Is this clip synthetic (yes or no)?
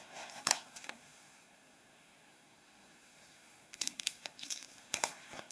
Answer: yes